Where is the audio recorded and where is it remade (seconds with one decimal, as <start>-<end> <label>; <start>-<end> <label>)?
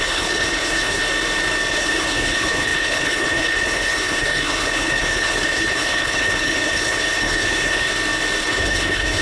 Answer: 0.0-1.0 remade; 1.0-1.7 recorded; 1.7-7.9 remade; 7.9-8.4 recorded; 8.4-9.2 remade